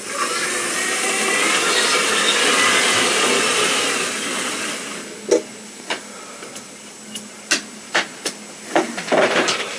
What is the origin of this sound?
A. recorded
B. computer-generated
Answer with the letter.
A